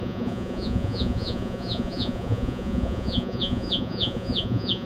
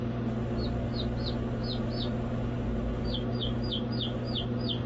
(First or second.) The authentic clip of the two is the second